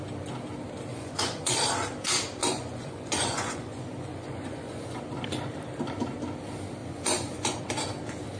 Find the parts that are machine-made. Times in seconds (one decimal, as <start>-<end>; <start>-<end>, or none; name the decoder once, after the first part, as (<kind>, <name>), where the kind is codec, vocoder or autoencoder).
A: 0.9-1.5 (vocoder, Vocos); 2.4-5.0; 6.8-7.6